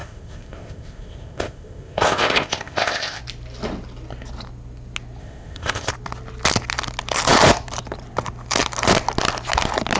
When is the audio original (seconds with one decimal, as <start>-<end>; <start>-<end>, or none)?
3.2-5.2; 5.9-10.0